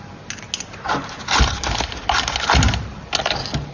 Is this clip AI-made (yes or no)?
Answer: no